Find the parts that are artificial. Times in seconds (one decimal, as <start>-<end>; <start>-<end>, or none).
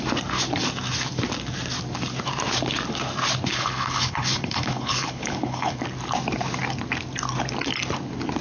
3.5-5.8